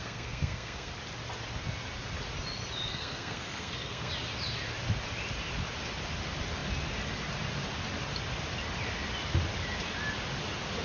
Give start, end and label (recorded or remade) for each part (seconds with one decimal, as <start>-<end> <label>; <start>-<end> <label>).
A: 0.0-0.9 remade; 0.9-2.9 recorded; 2.9-4.1 remade; 4.1-10.8 recorded